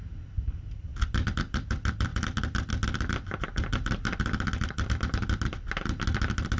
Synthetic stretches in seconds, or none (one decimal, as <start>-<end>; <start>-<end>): none